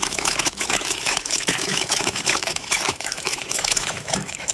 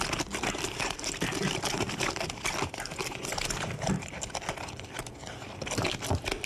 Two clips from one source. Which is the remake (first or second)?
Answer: first